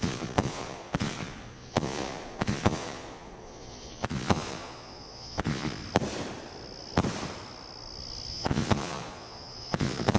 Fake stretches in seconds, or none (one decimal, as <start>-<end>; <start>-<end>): 0.0-5.8; 8.3-10.2